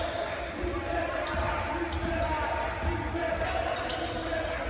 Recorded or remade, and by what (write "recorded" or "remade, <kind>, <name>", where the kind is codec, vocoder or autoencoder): recorded